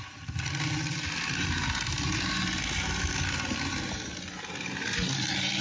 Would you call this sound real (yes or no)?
yes